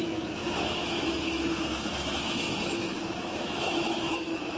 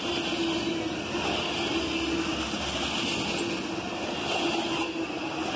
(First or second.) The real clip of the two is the second